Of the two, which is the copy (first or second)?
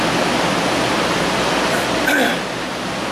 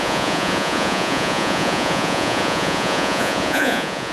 second